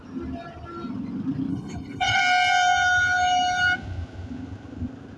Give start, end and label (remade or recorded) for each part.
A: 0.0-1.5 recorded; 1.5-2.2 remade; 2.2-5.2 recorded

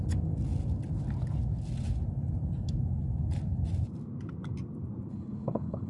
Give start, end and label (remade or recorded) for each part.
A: 0.0-5.1 recorded; 5.1-5.9 remade

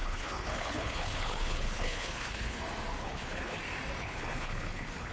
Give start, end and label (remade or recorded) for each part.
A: 0.0-2.6 remade; 2.6-3.0 recorded; 3.0-3.6 remade; 3.6-4.0 recorded; 4.0-5.1 remade